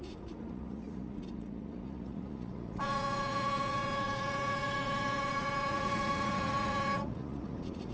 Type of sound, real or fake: fake